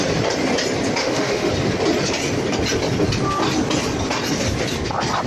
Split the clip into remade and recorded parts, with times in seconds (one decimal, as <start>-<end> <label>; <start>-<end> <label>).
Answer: 0.0-1.0 recorded; 1.0-1.5 remade; 1.5-5.3 recorded